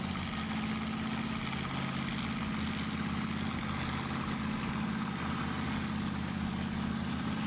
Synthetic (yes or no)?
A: no